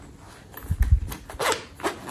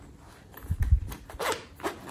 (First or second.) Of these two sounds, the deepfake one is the second